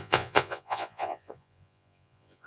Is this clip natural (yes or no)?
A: no